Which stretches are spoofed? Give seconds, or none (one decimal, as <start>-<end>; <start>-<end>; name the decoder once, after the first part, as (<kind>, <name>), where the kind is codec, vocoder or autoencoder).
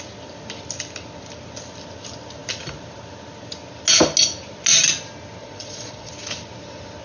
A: 5.4-6.1 (vocoder, Vocos)